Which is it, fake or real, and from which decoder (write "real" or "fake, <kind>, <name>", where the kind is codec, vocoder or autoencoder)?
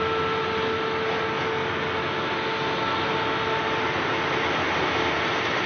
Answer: real